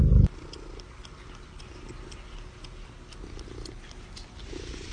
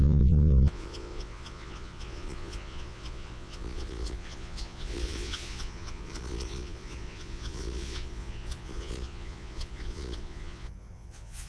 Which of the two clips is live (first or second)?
first